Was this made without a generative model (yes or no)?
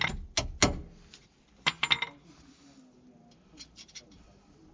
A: yes